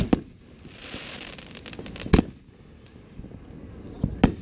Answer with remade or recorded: recorded